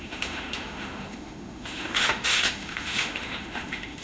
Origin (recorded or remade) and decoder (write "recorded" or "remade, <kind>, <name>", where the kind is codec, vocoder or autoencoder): remade, autoencoder, DAC-VAE